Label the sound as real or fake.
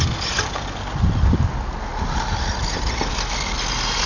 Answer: real